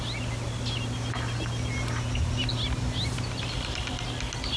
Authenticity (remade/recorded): recorded